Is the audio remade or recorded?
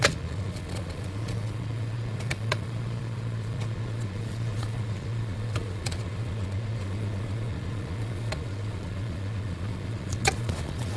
remade